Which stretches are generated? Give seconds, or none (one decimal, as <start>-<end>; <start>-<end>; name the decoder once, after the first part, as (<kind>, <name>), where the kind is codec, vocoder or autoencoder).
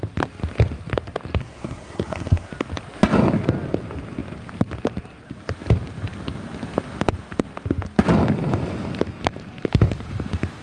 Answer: 1.4-2.5 (codec, SNAC)